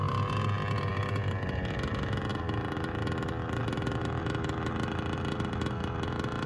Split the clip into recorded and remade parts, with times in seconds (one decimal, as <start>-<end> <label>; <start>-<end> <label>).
0.0-2.3 recorded; 2.3-2.9 remade; 2.9-3.6 recorded; 3.6-4.2 remade; 4.2-6.5 recorded